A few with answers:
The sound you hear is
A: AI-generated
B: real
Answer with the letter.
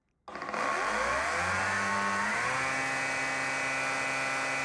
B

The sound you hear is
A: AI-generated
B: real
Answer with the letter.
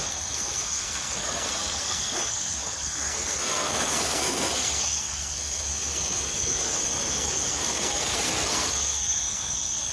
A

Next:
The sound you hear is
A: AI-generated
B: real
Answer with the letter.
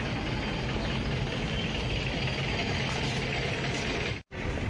B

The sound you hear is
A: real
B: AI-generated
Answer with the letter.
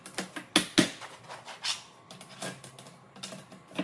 A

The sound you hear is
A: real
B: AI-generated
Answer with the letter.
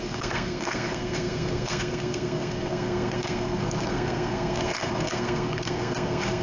B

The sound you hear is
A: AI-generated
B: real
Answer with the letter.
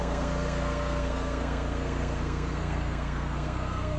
A